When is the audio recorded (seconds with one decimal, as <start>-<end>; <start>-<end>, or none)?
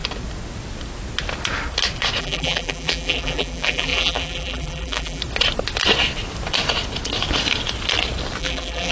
0.0-2.2; 5.2-8.4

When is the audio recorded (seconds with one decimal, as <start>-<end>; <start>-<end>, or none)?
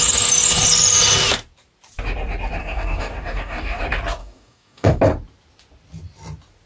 0.0-2.6; 3.8-4.2; 5.0-6.7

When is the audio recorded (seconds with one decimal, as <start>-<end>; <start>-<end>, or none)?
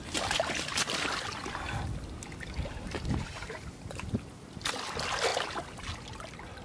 0.0-6.6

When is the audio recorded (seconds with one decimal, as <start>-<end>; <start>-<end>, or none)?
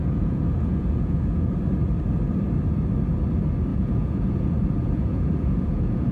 1.5-3.7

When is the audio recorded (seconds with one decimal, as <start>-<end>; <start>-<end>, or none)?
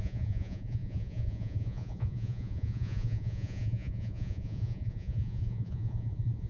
none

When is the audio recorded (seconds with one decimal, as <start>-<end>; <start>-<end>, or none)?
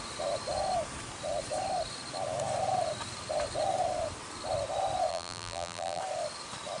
0.0-5.1; 6.0-6.8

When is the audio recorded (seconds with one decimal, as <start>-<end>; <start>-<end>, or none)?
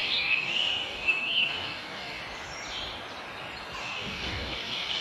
2.2-3.8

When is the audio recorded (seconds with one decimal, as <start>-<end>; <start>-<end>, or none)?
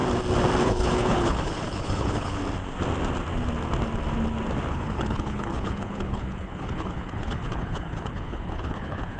0.0-0.6; 2.4-4.7